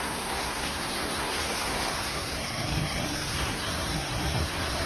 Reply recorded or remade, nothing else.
remade